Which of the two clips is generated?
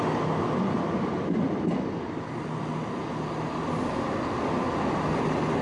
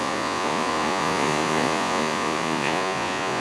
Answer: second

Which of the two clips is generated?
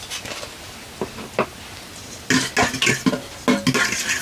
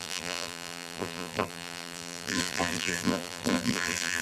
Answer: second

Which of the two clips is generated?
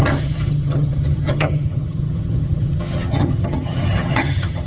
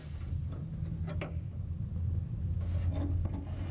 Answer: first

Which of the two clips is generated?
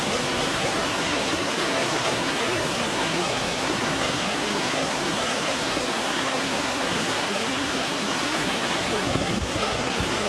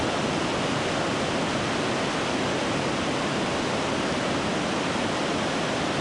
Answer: first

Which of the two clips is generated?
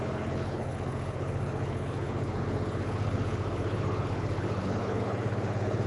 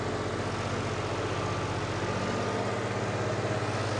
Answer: first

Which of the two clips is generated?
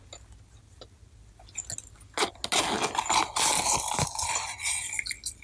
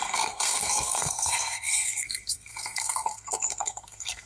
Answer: second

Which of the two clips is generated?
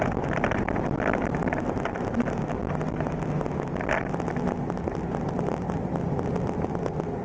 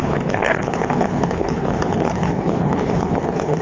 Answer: second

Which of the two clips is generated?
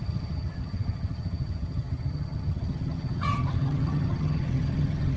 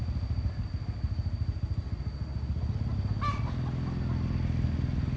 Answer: first